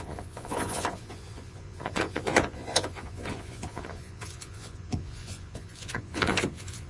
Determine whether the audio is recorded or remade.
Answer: remade